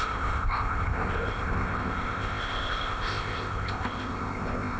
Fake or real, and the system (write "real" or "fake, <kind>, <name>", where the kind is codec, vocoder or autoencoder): fake, codec, ZipCodec